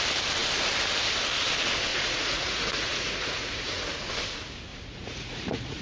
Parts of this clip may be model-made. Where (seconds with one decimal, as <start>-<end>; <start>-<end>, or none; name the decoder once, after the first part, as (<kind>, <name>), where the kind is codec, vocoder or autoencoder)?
1.9-4.1 (vocoder, Vocos); 4.7-5.8